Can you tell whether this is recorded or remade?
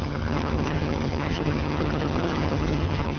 remade